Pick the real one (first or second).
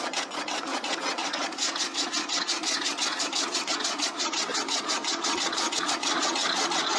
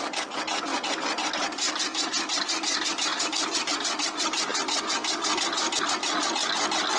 second